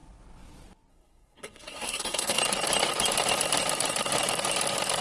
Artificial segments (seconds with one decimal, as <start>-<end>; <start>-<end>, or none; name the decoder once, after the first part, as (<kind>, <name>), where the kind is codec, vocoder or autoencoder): 0.9-2.4 (codec, SNAC)